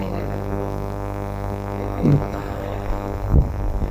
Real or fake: fake